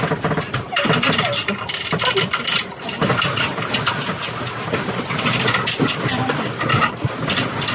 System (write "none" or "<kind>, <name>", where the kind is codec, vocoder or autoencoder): none